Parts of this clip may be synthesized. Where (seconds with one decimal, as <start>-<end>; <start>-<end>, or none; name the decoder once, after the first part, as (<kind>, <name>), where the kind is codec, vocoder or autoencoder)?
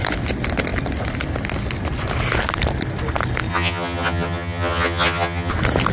3.5-5.5 (vocoder, HiFi-GAN)